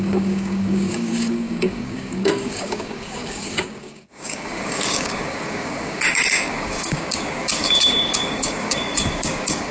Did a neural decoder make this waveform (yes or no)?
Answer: yes